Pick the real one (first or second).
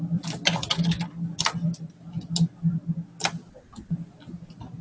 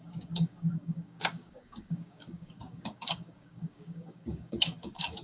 first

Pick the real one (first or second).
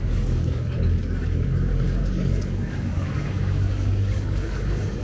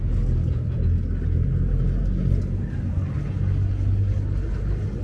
second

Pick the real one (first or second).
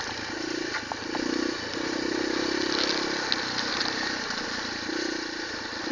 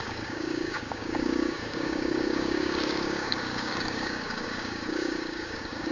first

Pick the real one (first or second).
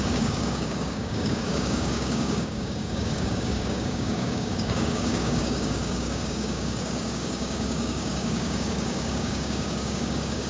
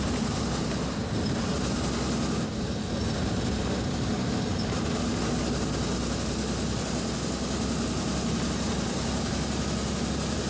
second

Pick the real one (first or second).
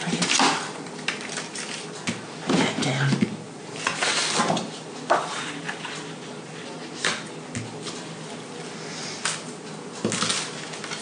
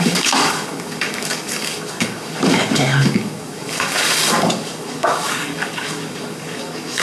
first